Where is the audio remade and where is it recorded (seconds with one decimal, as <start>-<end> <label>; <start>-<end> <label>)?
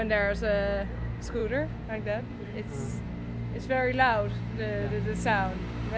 0.0-6.0 recorded